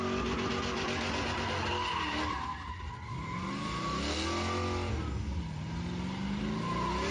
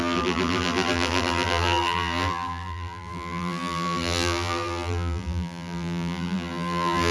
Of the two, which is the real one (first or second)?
first